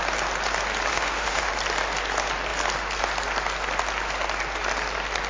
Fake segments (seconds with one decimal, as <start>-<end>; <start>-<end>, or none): 0.9-1.5